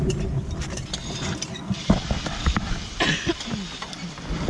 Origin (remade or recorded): recorded